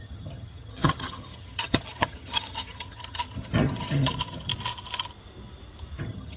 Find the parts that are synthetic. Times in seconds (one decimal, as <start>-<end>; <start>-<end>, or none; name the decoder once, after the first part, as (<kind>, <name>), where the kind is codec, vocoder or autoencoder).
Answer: 0.0-4.5 (vocoder, HiFi-GAN); 6.0-6.4